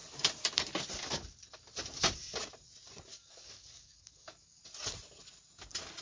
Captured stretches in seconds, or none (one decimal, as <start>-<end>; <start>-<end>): 0.0-3.2; 4.6-6.0